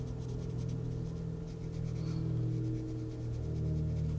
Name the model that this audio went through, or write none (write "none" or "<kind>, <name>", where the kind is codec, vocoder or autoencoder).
none